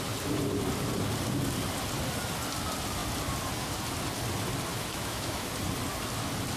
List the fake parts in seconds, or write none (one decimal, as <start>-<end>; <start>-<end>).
4.7-5.5